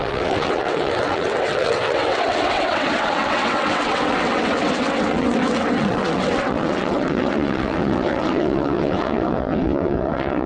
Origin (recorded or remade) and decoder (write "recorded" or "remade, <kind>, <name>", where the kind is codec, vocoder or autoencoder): remade, vocoder, WaveNeXt